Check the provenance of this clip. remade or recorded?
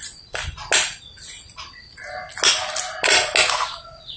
recorded